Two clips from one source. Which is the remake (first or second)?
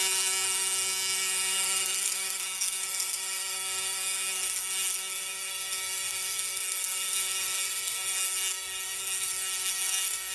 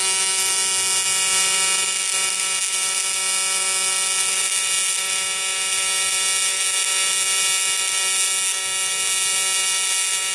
first